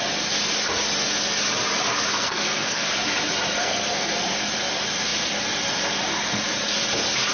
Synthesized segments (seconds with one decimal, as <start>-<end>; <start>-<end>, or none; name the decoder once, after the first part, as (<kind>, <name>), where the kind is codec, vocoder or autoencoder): 2.1-2.9 (codec, SNAC); 3.6-4.2

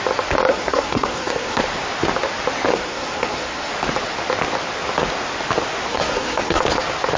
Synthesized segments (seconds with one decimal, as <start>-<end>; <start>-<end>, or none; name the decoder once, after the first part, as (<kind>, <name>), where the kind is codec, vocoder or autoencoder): 0.5-1.6 (codec, SNAC); 2.7-3.7; 5.9-6.6

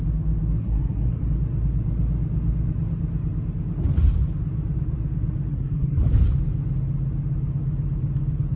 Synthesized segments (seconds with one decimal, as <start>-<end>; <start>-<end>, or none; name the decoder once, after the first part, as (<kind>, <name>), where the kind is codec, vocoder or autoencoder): 0.6-1.2 (codec, SNAC); 5.5-6.0

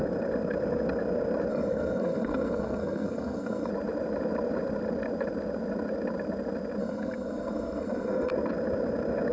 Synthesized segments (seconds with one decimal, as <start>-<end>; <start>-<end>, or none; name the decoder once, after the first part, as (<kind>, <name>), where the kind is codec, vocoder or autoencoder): 1.5-3.7 (codec, SNAC); 6.8-8.3

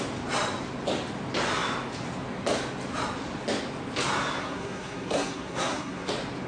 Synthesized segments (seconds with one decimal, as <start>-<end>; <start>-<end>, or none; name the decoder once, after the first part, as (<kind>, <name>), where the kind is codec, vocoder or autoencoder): 4.4-6.1 (codec, SNAC)

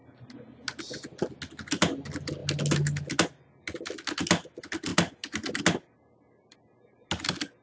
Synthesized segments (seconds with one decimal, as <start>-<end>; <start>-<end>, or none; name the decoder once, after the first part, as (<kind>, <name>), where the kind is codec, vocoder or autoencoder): none

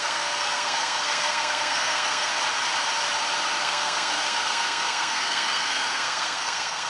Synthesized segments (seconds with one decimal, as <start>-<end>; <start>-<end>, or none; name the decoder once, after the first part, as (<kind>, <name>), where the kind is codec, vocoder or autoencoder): 0.0-2.3 (codec, SNAC); 3.6-6.9